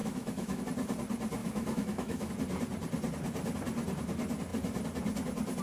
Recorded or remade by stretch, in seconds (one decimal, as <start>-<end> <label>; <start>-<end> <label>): 0.0-0.6 remade; 0.6-1.4 recorded; 1.4-2.3 remade; 2.3-5.6 recorded

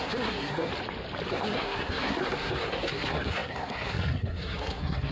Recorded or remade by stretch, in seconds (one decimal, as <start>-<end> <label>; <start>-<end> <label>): 0.0-0.7 remade; 0.7-1.3 recorded; 1.3-5.1 remade